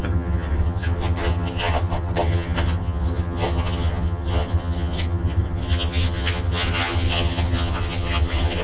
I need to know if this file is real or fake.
fake